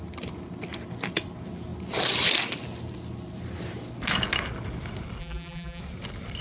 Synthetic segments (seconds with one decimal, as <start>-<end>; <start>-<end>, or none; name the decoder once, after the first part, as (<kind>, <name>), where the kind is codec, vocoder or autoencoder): 5.2-5.8 (vocoder, BigVGAN v2)